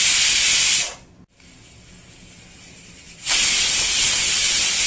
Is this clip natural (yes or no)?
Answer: yes